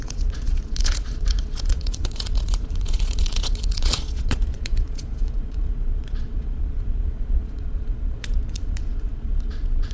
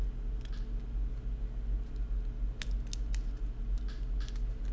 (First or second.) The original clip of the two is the second